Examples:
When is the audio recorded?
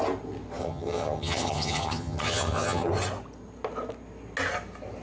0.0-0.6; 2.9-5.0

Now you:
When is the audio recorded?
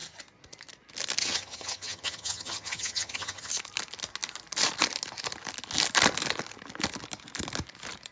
0.0-1.2; 3.5-8.1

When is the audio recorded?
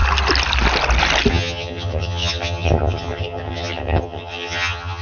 0.0-1.3